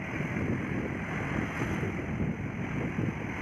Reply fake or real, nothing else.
real